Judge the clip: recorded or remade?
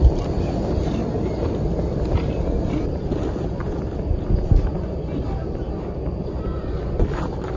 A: recorded